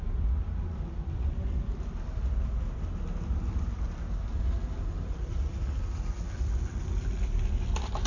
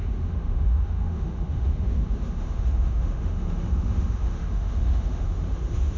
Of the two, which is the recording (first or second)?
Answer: first